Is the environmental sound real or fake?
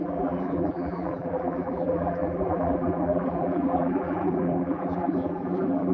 fake